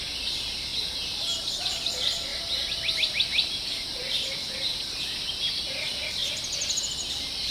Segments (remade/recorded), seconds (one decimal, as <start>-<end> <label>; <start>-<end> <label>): 0.0-7.5 recorded